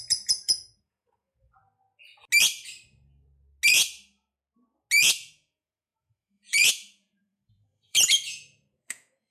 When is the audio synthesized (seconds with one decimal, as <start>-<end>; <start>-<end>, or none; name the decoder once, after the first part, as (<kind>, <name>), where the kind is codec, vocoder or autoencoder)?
0.0-1.6 (vocoder, Vocos); 5.2-9.3

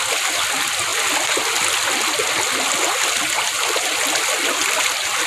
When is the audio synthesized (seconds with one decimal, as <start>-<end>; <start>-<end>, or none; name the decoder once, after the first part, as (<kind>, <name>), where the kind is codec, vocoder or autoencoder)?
none

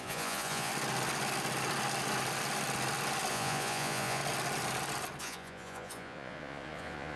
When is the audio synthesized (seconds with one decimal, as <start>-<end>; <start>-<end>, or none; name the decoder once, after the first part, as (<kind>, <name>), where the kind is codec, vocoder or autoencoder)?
0.0-0.7 (vocoder, Vocos); 3.3-4.2; 5.2-7.2

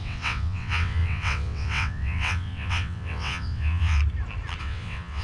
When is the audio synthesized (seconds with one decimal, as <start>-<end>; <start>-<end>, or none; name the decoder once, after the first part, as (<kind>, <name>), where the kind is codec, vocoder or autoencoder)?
0.0-4.0 (vocoder, WaveNeXt); 4.6-5.2

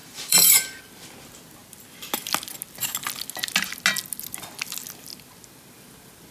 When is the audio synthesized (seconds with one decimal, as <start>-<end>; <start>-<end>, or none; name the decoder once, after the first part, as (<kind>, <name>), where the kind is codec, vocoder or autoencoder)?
0.0-0.8 (vocoder, BigVGAN v2)

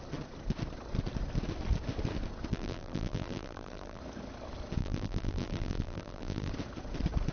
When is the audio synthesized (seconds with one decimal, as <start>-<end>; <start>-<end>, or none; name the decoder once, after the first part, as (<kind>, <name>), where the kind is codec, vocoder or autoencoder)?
2.5-4.0 (vocoder, BigVGAN v2); 4.8-6.5

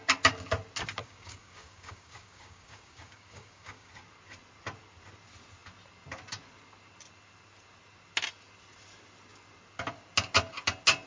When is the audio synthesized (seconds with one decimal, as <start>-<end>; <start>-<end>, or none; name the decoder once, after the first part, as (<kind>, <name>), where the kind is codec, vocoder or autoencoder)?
1.0-3.9 (codec, DAC)

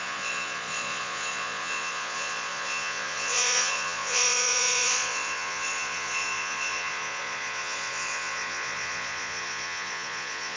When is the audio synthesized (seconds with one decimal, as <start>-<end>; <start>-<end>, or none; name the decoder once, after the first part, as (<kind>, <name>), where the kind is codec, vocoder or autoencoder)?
0.0-10.6 (vocoder, Vocos)